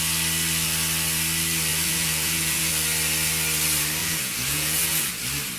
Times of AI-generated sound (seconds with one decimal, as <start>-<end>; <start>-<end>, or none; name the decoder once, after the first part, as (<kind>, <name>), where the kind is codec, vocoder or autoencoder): 1.7-2.7 (vocoder, Vocos); 4.0-5.1